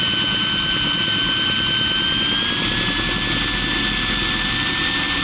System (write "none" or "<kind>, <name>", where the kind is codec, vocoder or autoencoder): none